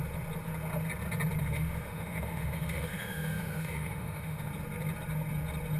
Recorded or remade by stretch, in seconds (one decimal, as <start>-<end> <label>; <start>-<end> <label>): 0.0-1.4 recorded; 1.4-4.5 remade; 4.5-5.8 recorded